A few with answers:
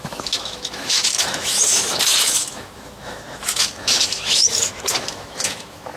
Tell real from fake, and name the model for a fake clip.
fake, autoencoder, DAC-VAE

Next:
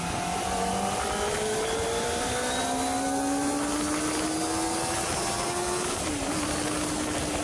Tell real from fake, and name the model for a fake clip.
real